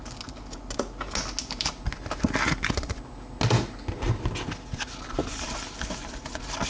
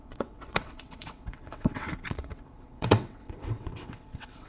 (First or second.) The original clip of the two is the first